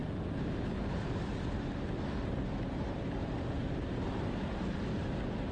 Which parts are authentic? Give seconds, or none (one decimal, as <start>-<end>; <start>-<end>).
0.0-5.5